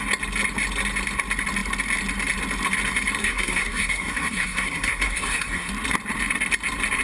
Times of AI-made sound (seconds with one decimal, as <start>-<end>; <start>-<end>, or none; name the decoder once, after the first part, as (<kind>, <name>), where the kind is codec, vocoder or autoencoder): 3.2-5.7 (codec, SNAC)